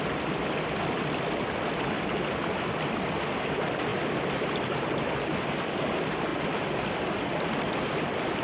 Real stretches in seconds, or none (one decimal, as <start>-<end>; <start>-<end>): 0.0-8.4